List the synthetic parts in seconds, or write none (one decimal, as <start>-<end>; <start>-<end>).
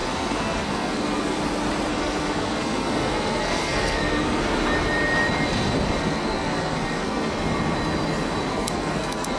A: 0.0-1.4; 1.9-4.4; 6.0-7.3; 8.5-9.4